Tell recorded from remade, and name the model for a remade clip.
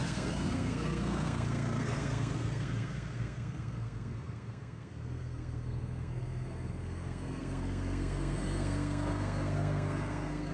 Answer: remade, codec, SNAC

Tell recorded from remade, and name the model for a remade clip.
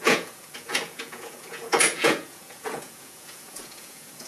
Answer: remade, vocoder, Vocos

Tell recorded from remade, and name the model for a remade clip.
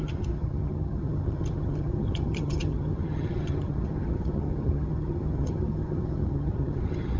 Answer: remade, vocoder, HiFi-GAN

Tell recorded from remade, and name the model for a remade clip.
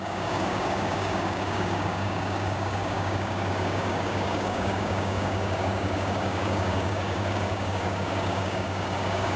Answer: remade, codec, DAC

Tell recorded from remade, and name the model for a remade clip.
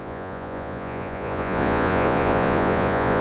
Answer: remade, vocoder, Vocos